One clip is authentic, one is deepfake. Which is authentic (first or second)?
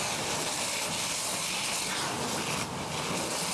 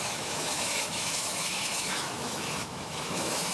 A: first